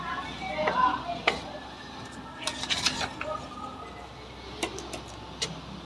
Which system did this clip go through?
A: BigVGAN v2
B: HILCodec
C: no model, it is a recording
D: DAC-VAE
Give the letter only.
C